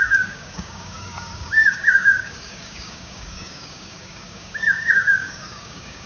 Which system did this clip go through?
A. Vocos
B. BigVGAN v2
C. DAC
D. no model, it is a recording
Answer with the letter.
C